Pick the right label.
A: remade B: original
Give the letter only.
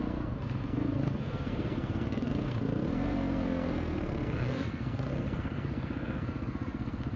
A